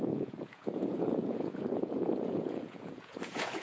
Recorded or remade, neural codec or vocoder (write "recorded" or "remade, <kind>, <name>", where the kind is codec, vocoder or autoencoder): remade, vocoder, Vocos